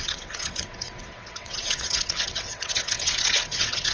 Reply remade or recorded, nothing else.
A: remade